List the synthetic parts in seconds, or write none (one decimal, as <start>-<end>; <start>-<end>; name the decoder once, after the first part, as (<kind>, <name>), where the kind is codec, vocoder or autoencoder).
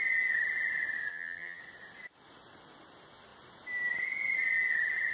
1.1-1.6 (vocoder, HiFi-GAN)